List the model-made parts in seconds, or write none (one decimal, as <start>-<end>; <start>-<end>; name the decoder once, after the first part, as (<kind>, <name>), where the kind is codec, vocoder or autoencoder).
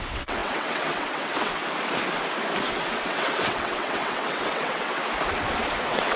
0.0-1.6 (vocoder, WaveNeXt); 2.7-5.0; 5.8-6.2